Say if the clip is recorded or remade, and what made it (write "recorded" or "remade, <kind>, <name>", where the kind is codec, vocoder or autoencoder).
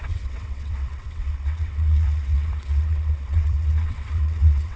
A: remade, vocoder, WaveNeXt